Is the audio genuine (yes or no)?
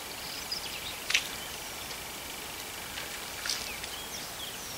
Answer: yes